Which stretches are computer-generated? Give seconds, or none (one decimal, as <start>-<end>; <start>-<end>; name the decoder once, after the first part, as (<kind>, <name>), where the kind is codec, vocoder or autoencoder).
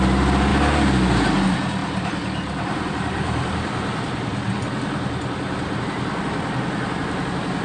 1.8-5.8 (vocoder, BigVGAN v2)